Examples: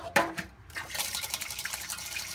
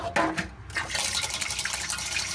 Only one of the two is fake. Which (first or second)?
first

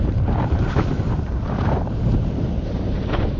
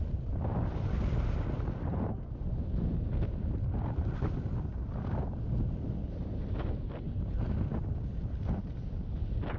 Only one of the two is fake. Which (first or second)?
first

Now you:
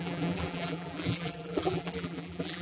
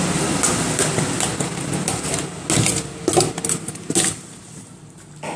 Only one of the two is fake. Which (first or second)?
first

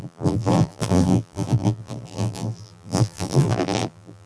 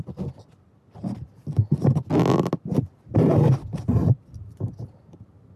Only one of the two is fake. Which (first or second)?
first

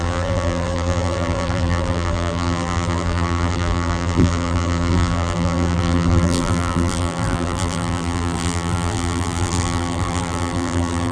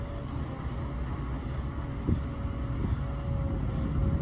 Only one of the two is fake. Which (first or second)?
first